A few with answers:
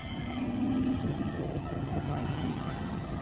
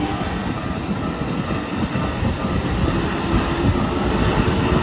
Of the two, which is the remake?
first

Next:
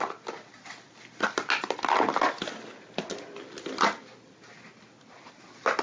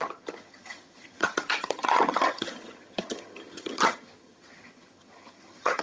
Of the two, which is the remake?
second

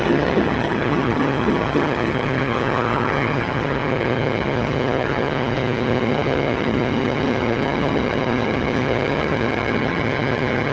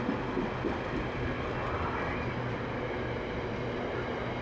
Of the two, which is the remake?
first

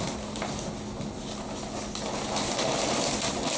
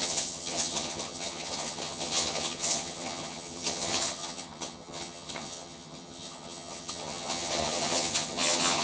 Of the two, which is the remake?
second